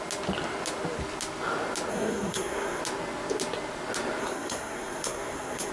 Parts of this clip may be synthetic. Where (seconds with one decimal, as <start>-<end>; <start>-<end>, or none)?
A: 1.9-2.8; 4.2-5.7